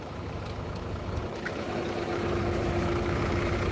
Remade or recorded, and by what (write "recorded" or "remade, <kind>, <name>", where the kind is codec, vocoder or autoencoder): remade, autoencoder, DAC-VAE